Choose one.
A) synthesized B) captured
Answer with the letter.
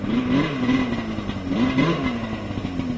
B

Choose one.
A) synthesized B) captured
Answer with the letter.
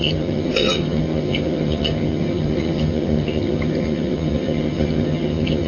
A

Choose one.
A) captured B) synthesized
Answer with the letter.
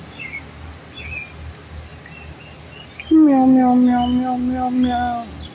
A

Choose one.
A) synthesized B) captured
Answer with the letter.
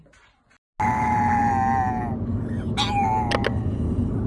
B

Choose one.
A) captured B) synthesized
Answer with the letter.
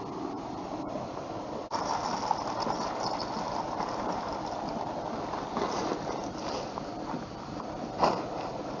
A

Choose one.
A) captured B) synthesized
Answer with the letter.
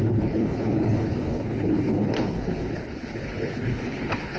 B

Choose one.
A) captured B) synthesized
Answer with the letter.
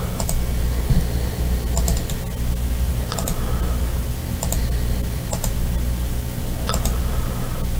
A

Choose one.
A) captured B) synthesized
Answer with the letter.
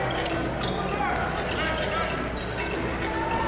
A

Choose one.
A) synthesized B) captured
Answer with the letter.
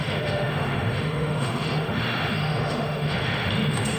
A